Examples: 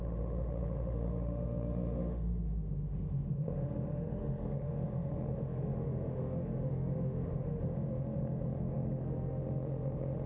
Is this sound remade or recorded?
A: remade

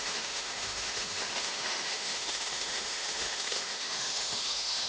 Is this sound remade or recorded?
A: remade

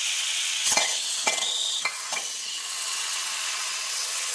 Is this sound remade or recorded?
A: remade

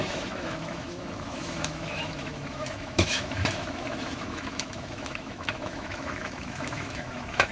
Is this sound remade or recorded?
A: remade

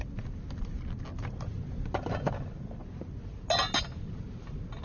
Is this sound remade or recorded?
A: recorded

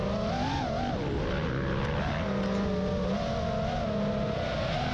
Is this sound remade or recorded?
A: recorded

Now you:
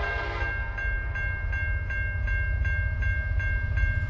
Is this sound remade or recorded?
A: recorded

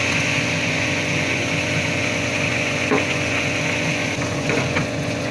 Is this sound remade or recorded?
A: remade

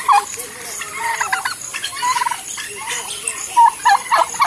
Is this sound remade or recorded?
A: recorded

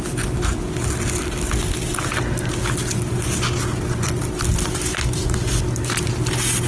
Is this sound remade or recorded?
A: recorded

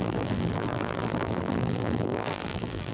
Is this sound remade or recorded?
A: remade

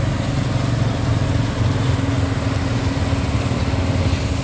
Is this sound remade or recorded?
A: recorded